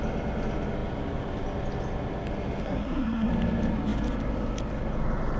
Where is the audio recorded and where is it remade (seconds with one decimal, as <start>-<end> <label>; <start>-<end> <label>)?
0.0-2.6 recorded; 2.6-3.3 remade; 3.3-5.4 recorded